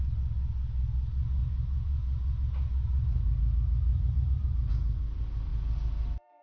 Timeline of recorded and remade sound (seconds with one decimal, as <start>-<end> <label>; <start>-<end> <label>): 0.0-1.4 recorded; 1.4-2.4 remade; 2.4-3.9 recorded; 3.9-4.7 remade; 4.7-6.4 recorded